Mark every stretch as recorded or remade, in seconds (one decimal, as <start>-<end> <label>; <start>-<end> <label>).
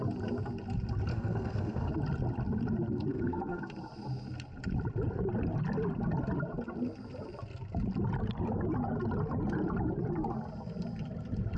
0.0-1.1 recorded; 1.1-1.9 remade; 1.9-3.1 recorded; 3.1-3.6 remade; 3.6-11.6 recorded